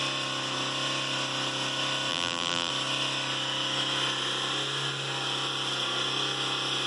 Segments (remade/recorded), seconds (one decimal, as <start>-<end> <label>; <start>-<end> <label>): 0.0-2.1 recorded; 2.1-2.7 remade; 2.7-6.9 recorded